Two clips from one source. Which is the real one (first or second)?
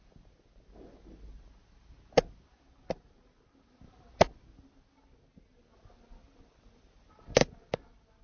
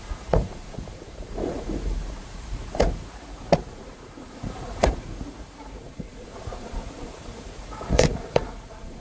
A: first